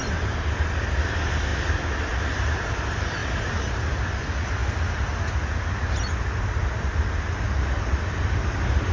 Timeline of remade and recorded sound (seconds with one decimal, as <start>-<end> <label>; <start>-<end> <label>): 0.0-8.9 recorded